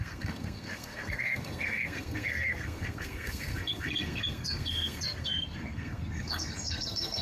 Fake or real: fake